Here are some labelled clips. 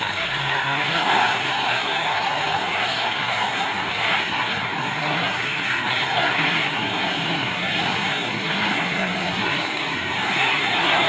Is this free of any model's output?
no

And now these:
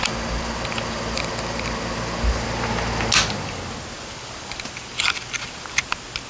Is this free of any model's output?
yes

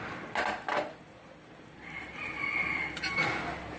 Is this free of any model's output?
yes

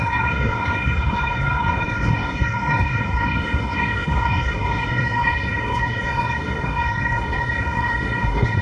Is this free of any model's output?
no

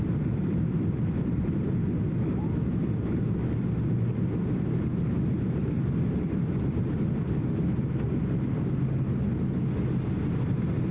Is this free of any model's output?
yes